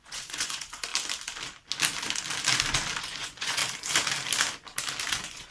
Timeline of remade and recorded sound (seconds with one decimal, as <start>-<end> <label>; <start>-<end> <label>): 0.0-0.9 remade; 0.9-3.0 recorded; 3.0-3.6 remade; 3.6-5.1 recorded; 5.1-5.5 remade